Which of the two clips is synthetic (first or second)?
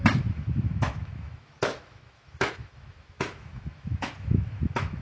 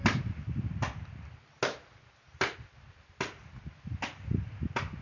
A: first